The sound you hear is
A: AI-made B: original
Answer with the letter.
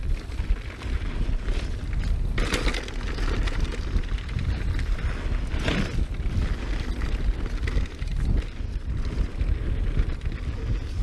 B